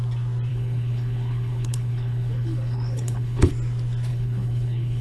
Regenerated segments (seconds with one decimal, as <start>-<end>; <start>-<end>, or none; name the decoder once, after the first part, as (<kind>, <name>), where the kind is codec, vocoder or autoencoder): 0.5-3.5 (codec, HILCodec); 4.1-5.0